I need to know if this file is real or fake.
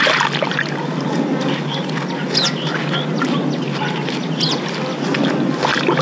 real